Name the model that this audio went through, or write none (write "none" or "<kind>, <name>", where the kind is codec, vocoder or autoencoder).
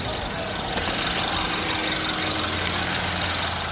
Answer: none